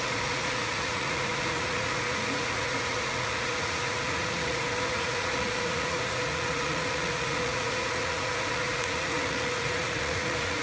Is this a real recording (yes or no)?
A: no